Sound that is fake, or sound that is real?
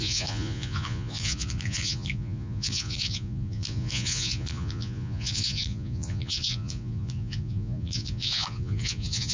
fake